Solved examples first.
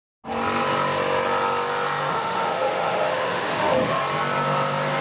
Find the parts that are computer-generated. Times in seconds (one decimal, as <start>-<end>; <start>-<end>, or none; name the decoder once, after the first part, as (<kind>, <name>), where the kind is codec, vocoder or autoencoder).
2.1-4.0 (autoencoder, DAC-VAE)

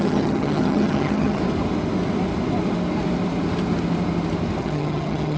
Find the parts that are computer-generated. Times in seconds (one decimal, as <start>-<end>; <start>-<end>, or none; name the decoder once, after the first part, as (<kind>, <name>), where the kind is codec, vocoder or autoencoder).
0.0-1.4 (vocoder, HiFi-GAN); 4.6-5.4

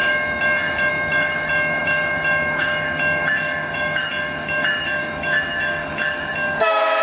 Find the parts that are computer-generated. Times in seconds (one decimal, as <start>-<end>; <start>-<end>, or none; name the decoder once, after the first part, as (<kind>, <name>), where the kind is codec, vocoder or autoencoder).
0.0-7.0 (autoencoder, DAC-VAE)

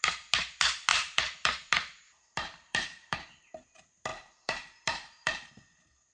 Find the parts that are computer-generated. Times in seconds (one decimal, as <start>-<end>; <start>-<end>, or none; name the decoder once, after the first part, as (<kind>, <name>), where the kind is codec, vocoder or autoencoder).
0.9-3.5 (vocoder, BigVGAN v2); 4.1-5.5

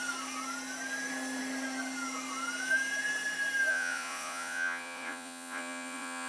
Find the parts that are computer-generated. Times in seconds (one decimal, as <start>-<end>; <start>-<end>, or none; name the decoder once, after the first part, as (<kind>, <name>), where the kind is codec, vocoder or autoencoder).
3.7-6.3 (vocoder, Vocos)